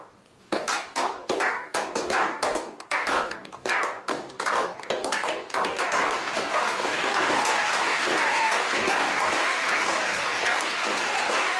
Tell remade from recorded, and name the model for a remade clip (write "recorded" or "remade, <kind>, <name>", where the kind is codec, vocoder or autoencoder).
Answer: remade, codec, DAC